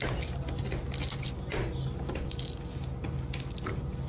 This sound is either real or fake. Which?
real